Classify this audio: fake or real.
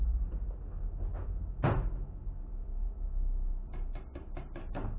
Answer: real